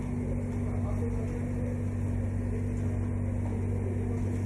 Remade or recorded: recorded